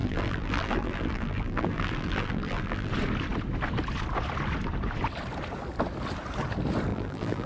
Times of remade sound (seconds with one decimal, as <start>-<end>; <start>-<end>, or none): 0.0-2.9; 6.9-7.5